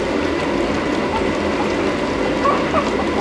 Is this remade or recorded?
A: recorded